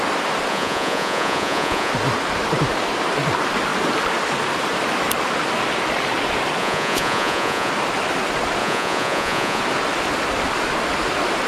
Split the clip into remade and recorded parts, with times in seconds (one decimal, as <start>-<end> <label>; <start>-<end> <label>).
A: 0.0-0.5 recorded; 0.5-1.9 remade; 1.9-6.6 recorded; 6.6-7.7 remade; 7.7-8.6 recorded; 8.6-9.6 remade; 9.6-11.5 recorded